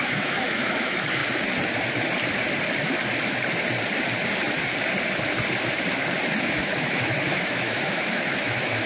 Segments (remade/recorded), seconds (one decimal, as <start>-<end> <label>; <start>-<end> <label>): 0.0-1.2 remade; 1.2-6.4 recorded; 6.4-8.9 remade